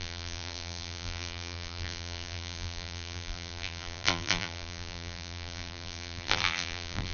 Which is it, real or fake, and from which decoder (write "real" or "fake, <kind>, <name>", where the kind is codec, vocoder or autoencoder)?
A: fake, vocoder, BigVGAN v2